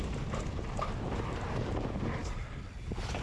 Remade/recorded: recorded